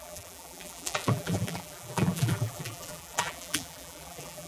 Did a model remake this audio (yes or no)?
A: yes